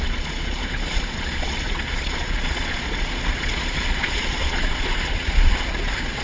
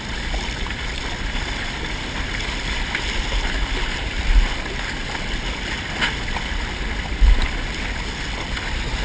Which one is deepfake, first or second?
first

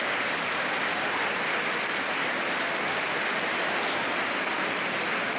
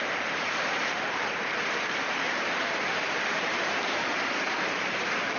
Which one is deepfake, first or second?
second